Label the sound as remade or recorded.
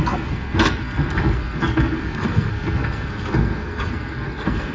remade